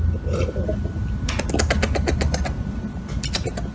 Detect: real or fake real